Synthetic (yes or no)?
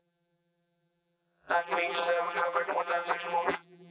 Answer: yes